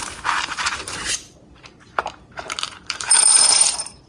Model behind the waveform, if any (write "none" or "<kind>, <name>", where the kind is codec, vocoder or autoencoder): vocoder, BigVGAN v2